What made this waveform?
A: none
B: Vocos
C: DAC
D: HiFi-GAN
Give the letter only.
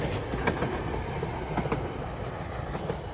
A